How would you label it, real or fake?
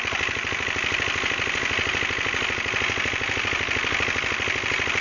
real